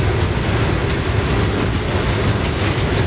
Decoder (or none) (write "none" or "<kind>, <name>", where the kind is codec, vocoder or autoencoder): none